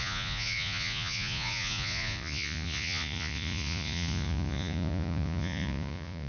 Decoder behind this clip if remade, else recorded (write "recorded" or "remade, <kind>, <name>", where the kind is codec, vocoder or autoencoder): remade, vocoder, Vocos